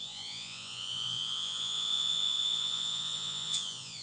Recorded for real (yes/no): no